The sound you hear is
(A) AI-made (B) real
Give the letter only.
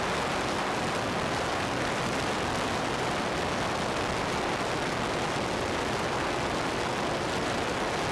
B